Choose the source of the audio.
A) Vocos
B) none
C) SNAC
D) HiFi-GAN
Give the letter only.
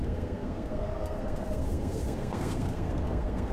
C